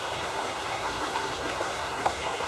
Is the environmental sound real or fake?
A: fake